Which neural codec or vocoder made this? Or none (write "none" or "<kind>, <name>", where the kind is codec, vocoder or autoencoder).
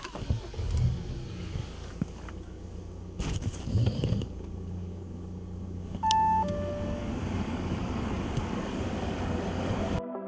codec, DAC